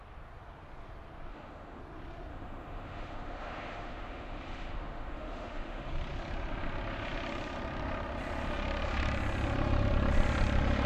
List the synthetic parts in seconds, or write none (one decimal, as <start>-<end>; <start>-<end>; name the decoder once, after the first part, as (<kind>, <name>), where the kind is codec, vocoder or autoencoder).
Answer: 1.3-1.8 (autoencoder, DAC-VAE); 2.3-5.9